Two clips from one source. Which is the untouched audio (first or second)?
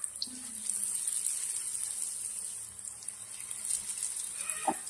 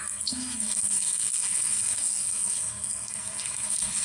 first